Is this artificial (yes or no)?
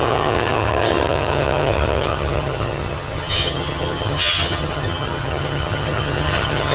yes